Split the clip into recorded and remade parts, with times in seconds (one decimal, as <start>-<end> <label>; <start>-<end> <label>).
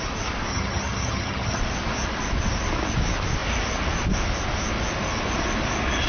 0.0-0.5 recorded; 0.5-1.6 remade; 1.6-6.1 recorded